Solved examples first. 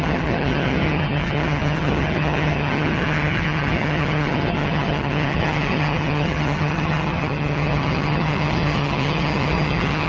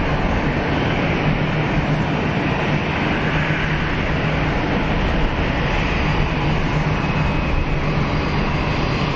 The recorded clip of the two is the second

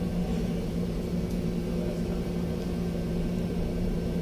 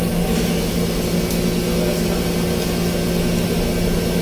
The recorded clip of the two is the second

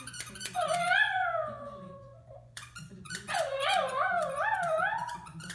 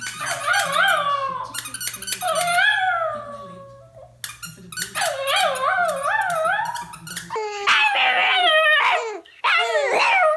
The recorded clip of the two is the second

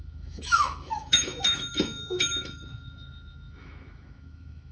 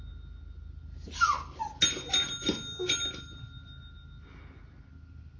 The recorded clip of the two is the second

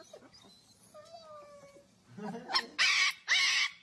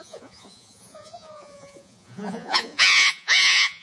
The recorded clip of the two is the first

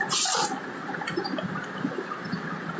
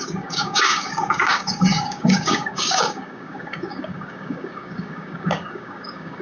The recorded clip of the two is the first